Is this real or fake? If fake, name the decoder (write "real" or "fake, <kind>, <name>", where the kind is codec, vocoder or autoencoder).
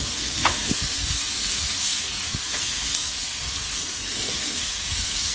fake, codec, SNAC